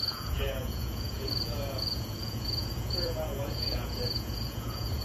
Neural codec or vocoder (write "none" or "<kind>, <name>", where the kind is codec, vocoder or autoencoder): vocoder, Vocos